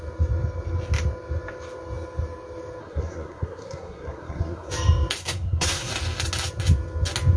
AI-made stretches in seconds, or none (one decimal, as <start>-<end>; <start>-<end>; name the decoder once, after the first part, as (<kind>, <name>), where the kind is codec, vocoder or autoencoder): 2.8-4.7 (codec, SNAC); 5.2-5.9